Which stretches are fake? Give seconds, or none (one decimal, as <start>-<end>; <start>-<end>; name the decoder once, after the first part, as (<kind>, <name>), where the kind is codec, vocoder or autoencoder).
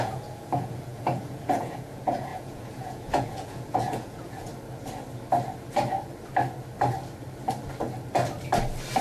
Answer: 0.0-4.5 (vocoder, Vocos)